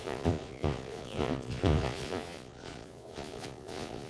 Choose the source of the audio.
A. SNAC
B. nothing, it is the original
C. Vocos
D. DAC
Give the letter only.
C